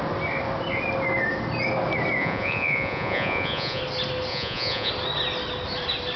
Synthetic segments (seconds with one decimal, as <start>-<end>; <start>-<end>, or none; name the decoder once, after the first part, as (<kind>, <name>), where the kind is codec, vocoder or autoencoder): 2.2-3.8 (vocoder, Vocos); 4.3-4.9